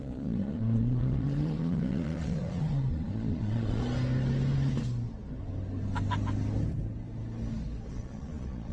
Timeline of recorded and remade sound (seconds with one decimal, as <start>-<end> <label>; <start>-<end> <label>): 0.0-3.8 remade; 3.8-7.9 recorded; 7.9-8.7 remade